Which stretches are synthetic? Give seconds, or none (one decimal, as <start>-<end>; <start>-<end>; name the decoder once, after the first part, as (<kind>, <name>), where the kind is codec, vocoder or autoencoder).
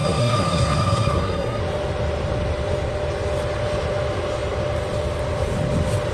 0.0-1.6 (codec, SNAC)